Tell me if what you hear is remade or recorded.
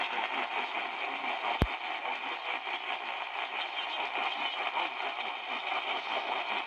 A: recorded